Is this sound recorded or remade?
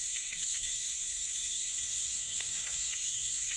remade